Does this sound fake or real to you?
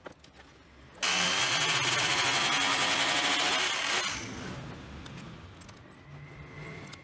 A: real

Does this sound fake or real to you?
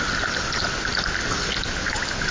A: real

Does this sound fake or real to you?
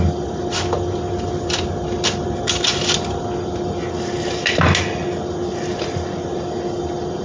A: real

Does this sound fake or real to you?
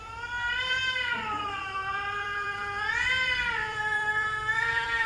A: fake